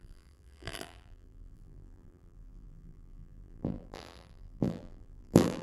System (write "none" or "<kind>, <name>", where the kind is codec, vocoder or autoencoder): vocoder, BigVGAN v2